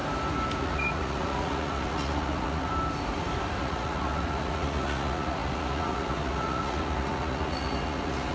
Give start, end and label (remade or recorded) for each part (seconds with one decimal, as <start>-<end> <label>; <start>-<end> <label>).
0.0-0.6 recorded; 0.6-2.7 remade; 2.7-3.6 recorded; 3.6-8.3 remade